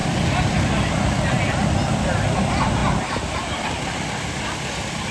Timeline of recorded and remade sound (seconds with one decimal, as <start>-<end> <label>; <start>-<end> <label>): 0.0-5.1 recorded